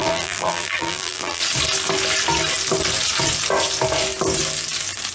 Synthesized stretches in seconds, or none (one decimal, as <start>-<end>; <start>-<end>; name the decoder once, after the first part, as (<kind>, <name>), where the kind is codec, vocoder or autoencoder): 0.0-1.4 (vocoder, BigVGAN v2)